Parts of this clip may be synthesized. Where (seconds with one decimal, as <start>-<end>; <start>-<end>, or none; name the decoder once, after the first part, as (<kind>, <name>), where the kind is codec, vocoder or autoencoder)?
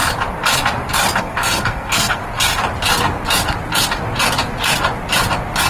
1.2-2.2 (codec, SNAC)